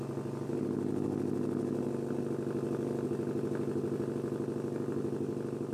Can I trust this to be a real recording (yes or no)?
yes